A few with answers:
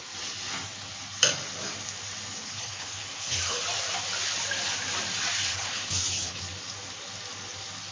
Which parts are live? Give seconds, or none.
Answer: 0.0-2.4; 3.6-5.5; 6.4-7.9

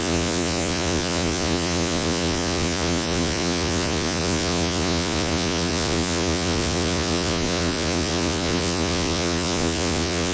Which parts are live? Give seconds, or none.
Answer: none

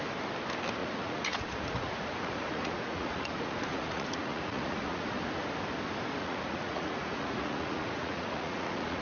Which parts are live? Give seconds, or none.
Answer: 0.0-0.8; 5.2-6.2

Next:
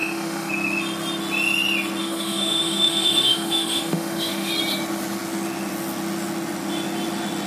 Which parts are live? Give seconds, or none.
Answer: 0.5-2.0; 4.5-7.5

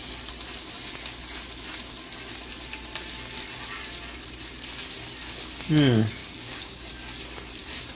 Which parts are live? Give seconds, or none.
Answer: 0.0-6.2; 6.9-8.0